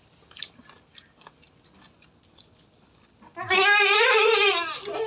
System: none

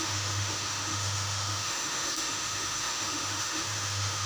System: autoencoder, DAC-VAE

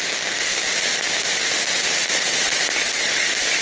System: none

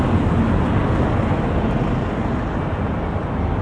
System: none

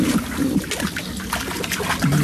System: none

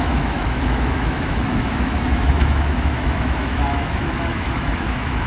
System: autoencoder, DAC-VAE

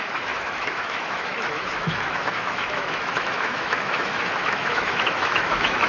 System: autoencoder, DAC-VAE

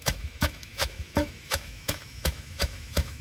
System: autoencoder, DAC-VAE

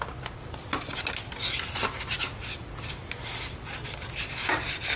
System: none